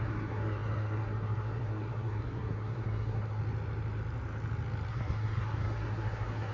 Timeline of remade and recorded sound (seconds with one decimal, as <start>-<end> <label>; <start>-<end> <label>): 0.0-3.4 remade; 3.4-4.9 recorded; 4.9-6.5 remade